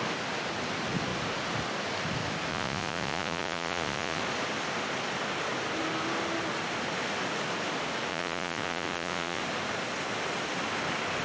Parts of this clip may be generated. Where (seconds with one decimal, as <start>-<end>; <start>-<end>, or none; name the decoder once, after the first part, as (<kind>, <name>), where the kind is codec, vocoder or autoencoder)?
2.5-4.2 (vocoder, Vocos); 8.1-9.4